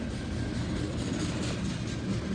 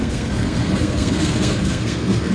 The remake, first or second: second